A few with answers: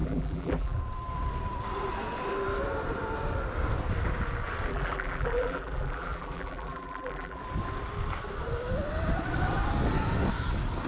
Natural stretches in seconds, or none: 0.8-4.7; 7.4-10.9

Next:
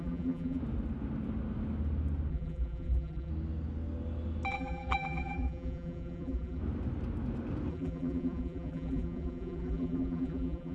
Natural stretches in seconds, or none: 0.6-2.3; 3.3-4.5; 6.6-7.7

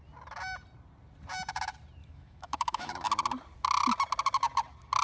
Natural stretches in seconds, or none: 0.0-2.0; 3.1-5.0

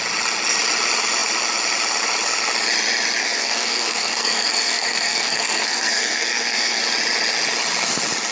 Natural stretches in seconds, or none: 0.0-3.2; 6.8-8.3

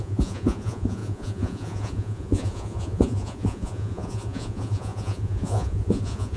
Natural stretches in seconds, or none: none

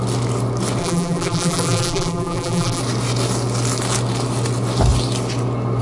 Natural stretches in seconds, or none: 0.0-0.8; 2.8-5.8

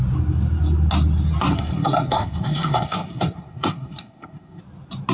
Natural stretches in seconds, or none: 0.0-1.5; 4.6-5.1

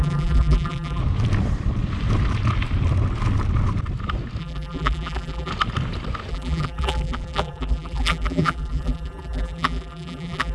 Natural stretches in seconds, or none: 1.0-4.4; 5.5-6.3